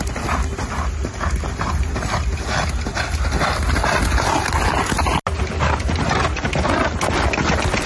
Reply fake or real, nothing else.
real